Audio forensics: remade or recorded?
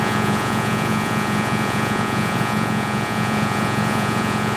remade